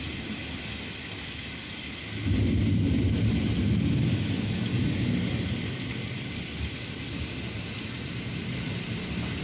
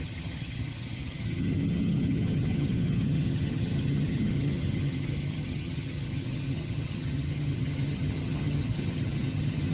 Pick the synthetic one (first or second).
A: second